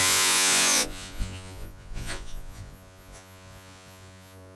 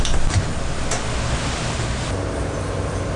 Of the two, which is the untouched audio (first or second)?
second